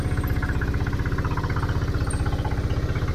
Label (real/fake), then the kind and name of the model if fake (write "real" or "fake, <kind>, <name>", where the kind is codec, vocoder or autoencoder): real